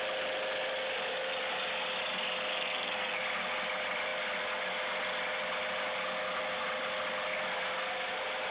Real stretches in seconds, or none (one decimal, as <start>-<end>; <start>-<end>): 0.0-2.5; 3.2-8.5